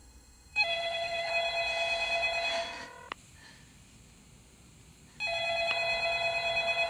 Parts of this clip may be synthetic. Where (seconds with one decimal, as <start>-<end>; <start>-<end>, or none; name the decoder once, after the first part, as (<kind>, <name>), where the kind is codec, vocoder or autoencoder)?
0.0-1.3 (autoencoder, DAC-VAE)